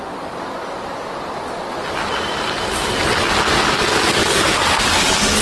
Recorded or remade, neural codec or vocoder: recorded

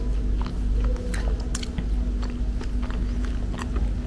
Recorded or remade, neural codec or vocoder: recorded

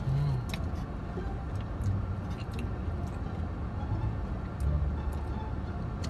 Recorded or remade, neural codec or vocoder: recorded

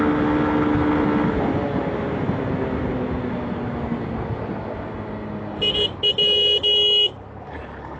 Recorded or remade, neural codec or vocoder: recorded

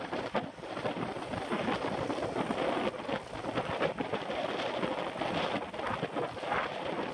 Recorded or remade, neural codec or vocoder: recorded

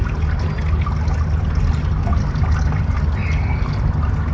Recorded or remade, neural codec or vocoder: recorded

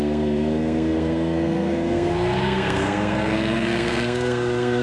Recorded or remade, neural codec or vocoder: remade, codec, SNAC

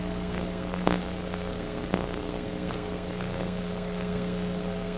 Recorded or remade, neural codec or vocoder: remade, codec, SNAC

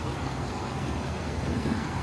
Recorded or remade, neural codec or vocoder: remade, codec, SNAC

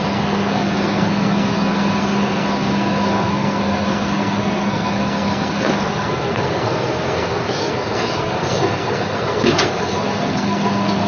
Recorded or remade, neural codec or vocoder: remade, codec, SNAC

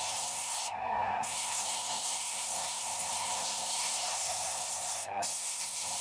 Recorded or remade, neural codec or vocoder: remade, codec, SNAC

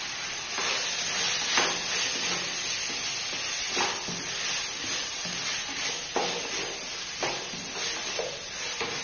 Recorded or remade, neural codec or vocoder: recorded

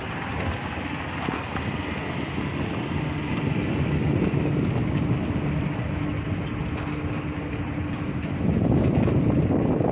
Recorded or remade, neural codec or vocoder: recorded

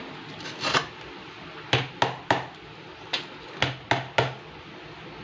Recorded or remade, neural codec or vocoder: recorded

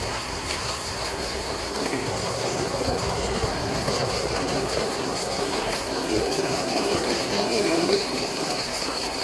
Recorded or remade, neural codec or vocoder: remade, codec, SNAC